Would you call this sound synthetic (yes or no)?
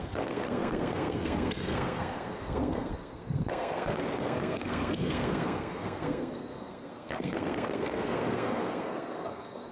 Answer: yes